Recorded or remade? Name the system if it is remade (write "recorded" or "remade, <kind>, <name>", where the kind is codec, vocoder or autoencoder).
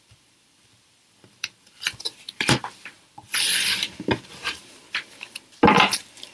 remade, vocoder, BigVGAN v2